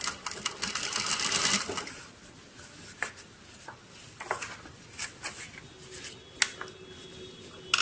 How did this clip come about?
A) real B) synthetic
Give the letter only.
A